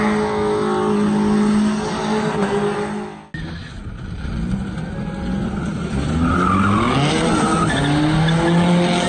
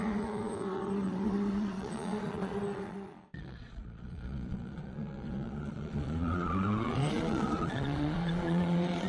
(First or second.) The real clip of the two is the first